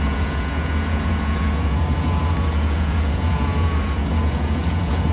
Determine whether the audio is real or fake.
fake